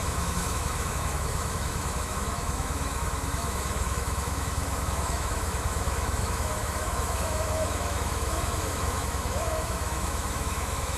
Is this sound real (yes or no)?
no